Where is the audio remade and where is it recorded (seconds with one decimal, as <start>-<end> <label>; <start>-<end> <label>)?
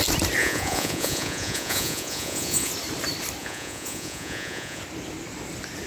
0.0-0.4 recorded; 0.4-2.7 remade; 2.7-3.4 recorded; 3.4-4.8 remade; 4.8-5.9 recorded